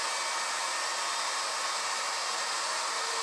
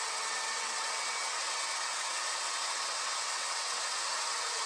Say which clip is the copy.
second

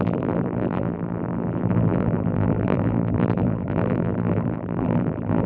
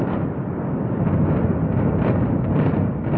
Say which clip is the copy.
first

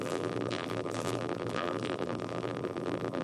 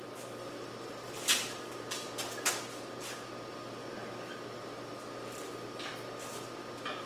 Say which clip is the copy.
first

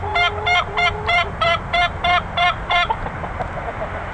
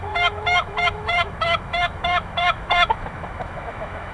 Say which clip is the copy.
second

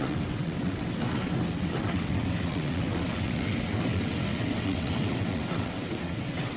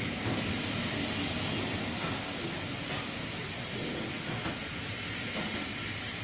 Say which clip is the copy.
first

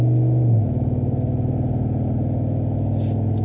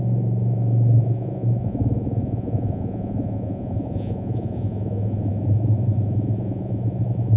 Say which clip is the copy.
second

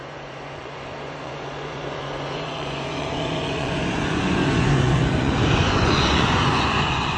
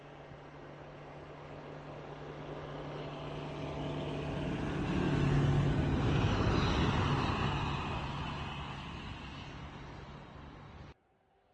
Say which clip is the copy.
first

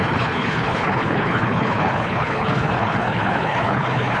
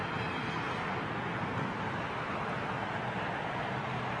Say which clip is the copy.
first